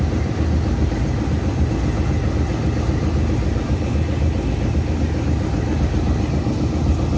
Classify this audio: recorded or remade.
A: recorded